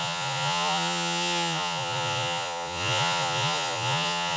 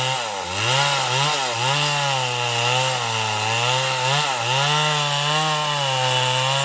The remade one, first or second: first